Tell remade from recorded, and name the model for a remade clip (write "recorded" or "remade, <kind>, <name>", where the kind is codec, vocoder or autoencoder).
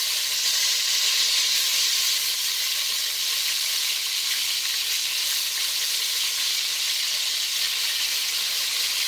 recorded